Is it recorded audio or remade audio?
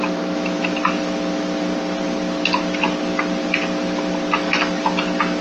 recorded